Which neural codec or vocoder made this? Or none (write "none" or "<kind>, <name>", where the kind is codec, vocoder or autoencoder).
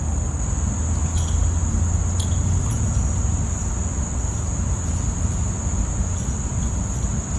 none